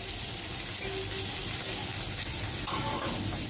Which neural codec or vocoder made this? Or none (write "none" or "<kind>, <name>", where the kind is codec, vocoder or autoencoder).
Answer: none